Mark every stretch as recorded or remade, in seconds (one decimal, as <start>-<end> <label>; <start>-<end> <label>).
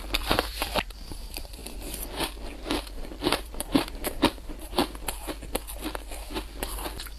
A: 0.0-1.6 remade; 1.6-2.9 recorded; 2.9-4.8 remade; 4.8-7.2 recorded